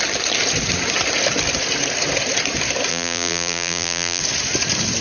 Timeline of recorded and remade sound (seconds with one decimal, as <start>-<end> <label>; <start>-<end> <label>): 0.0-2.9 recorded; 2.9-4.2 remade; 4.2-5.0 recorded